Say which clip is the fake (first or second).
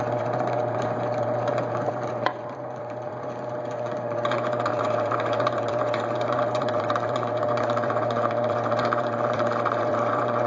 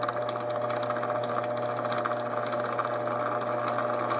first